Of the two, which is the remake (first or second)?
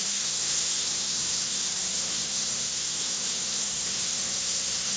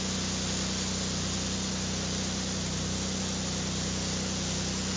first